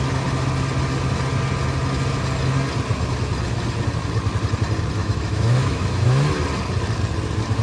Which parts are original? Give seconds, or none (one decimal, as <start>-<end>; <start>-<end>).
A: 0.0-5.0; 6.3-7.6